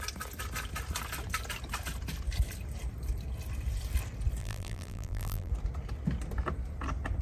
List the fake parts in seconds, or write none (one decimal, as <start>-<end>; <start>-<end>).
4.4-5.5